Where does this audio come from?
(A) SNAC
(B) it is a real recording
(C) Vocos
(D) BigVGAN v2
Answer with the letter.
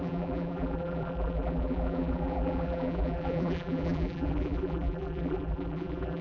D